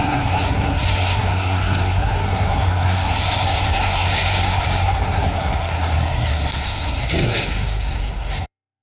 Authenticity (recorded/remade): remade